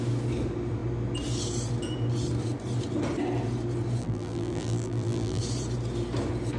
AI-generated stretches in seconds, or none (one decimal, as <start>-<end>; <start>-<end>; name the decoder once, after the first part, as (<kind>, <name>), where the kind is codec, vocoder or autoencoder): 4.0-5.4 (vocoder, BigVGAN v2)